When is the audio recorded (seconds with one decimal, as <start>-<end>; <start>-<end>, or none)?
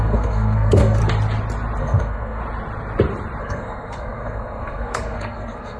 1.0-1.8; 2.4-3.4